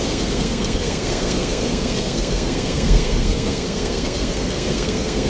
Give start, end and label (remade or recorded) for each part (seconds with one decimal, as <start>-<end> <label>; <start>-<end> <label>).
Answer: 0.0-5.3 remade